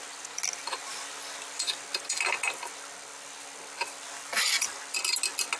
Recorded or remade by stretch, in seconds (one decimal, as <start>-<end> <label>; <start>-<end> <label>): 0.0-5.6 recorded